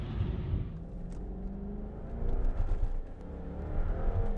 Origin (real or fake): real